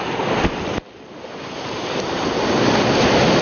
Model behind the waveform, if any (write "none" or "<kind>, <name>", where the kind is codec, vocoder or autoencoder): none